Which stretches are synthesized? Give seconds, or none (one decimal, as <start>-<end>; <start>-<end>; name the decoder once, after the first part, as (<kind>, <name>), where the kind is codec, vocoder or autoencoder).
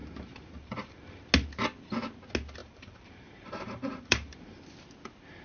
0.0-1.2 (vocoder, BigVGAN v2); 2.6-4.6